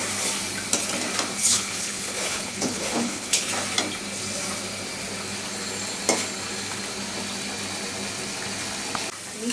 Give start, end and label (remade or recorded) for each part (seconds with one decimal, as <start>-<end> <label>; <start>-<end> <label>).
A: 0.0-1.4 recorded; 1.4-3.5 remade; 3.5-9.5 recorded